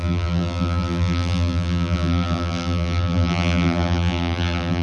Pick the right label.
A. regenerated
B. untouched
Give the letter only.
A